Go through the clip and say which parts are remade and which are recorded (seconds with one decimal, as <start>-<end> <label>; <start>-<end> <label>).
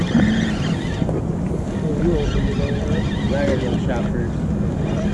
0.0-5.1 recorded